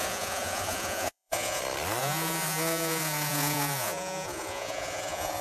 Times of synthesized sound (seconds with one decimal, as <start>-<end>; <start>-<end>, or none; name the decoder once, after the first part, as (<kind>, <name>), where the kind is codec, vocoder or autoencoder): 0.0-1.6 (vocoder, Vocos); 2.0-5.4